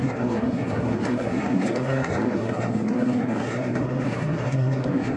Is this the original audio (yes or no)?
no